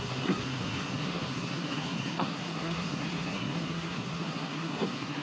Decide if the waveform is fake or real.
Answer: fake